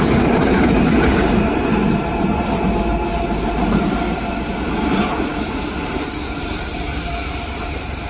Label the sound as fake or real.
real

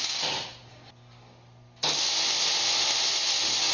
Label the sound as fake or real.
real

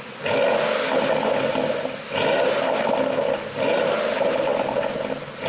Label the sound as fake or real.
real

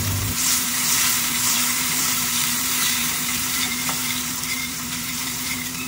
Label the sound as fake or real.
fake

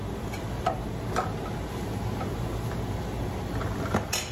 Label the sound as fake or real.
real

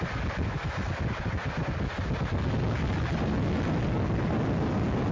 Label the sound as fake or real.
real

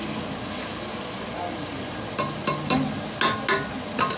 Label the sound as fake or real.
real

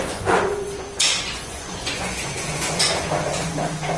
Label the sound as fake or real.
fake